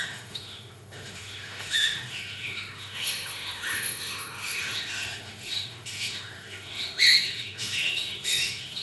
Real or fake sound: fake